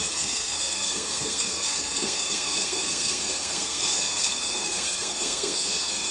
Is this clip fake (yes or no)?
yes